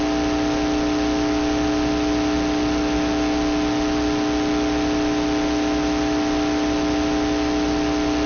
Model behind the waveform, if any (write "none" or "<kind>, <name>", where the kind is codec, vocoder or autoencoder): none